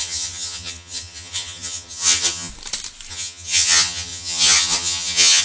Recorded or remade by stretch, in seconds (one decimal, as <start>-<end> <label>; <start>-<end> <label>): 0.0-2.5 remade; 2.5-3.1 recorded; 3.1-5.4 remade